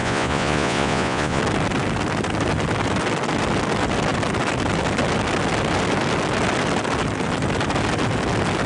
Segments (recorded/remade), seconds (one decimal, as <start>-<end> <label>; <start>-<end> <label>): 0.0-1.4 remade; 1.4-8.7 recorded

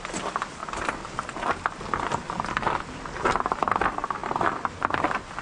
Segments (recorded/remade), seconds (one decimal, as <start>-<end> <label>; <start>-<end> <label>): 0.0-5.4 recorded

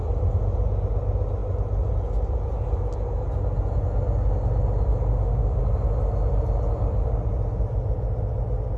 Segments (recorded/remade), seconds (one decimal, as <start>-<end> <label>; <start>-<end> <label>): 0.0-5.1 recorded; 5.1-5.6 remade; 5.6-8.8 recorded

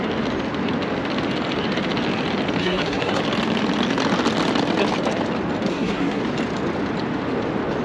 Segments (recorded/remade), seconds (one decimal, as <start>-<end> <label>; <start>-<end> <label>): 0.0-2.6 recorded; 2.6-3.2 remade; 3.2-5.7 recorded; 5.7-6.2 remade; 6.2-7.8 recorded